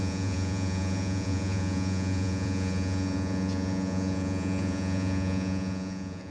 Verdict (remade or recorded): remade